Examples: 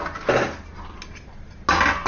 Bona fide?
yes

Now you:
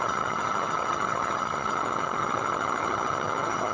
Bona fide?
no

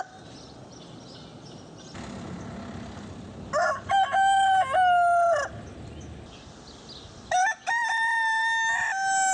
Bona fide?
yes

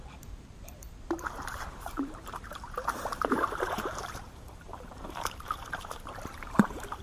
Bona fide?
no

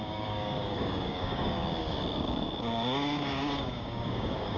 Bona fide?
no